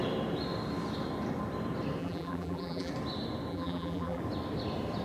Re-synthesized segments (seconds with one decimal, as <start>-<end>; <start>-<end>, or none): 2.0-2.9; 3.5-4.2